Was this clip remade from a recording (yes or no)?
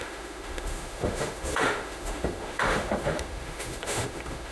yes